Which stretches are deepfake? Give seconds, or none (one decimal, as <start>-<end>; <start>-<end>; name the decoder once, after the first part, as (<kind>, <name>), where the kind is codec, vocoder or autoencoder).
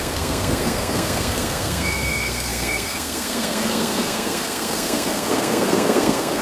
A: 0.0-6.4 (codec, SNAC)